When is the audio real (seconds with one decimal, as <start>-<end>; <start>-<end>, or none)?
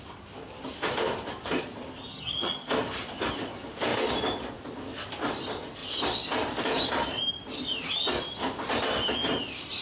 0.0-2.1; 2.7-9.8